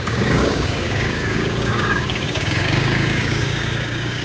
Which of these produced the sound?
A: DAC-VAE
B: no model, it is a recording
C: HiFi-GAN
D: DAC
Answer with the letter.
D